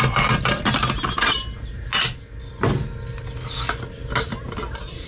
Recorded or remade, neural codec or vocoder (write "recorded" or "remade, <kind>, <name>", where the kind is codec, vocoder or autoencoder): recorded